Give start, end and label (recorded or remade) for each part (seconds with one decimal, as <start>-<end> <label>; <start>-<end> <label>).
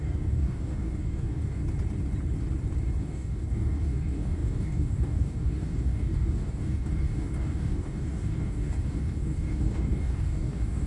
0.0-1.6 remade; 1.6-3.0 recorded; 3.0-10.9 remade